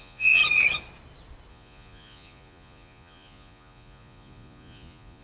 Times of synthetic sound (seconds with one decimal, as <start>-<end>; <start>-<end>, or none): 0.0-0.4; 1.5-5.2